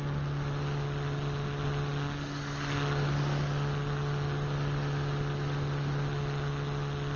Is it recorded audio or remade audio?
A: recorded